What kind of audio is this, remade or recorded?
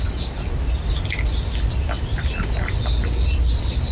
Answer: recorded